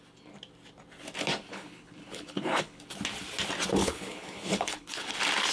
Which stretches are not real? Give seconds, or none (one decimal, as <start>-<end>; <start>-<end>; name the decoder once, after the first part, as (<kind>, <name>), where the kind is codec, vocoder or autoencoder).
1.5-2.8 (codec, HILCodec); 3.8-5.1